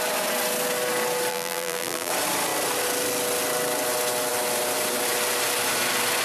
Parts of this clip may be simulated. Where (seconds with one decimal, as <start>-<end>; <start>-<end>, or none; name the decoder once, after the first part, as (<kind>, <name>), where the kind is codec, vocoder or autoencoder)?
1.3-2.1 (vocoder, BigVGAN v2)